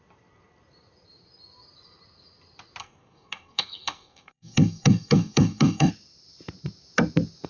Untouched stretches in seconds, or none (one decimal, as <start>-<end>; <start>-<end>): 0.0-2.8; 5.9-7.5